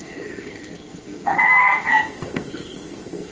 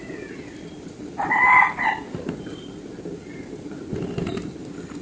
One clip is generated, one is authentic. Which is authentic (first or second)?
second